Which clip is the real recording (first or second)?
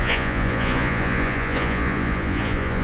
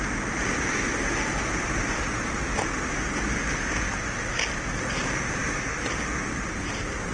second